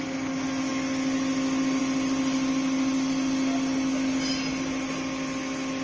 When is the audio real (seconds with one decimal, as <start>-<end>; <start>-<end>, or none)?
0.0-5.8